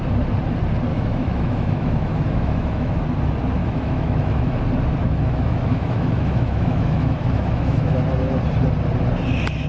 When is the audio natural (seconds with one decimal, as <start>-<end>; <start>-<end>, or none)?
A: 0.0-0.9; 3.0-3.6; 4.6-5.0; 8.0-9.7